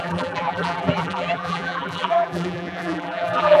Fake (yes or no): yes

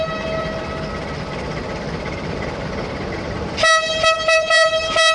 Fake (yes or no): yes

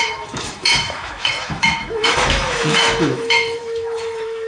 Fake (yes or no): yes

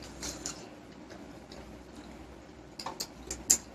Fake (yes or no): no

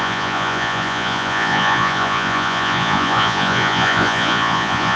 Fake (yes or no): yes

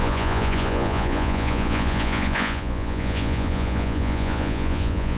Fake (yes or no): yes